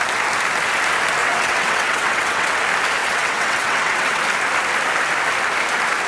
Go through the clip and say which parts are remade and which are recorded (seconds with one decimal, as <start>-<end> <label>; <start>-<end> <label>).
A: 0.0-1.2 recorded; 1.2-2.6 remade; 2.6-3.0 recorded; 3.0-4.2 remade; 4.2-6.1 recorded